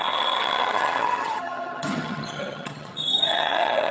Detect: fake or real fake